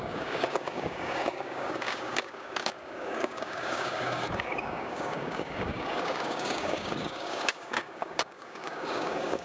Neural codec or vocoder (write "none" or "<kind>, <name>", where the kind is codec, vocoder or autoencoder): codec, DAC